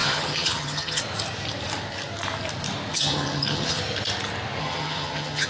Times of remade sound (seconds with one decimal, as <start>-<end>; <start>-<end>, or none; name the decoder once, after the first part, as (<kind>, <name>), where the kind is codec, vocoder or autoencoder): 0.0-1.0 (vocoder, HiFi-GAN); 2.9-3.8; 4.6-5.5